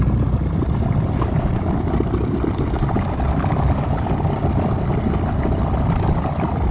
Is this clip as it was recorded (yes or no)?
yes